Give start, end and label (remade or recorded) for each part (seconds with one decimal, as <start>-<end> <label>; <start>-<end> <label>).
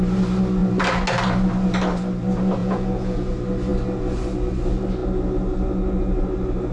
0.0-2.6 recorded; 2.6-3.3 remade; 3.3-6.7 recorded